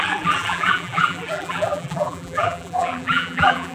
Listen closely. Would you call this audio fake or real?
fake